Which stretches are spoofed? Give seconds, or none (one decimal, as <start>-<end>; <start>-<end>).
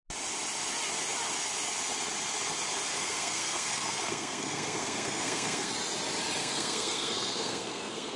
2.9-5.7; 6.4-8.2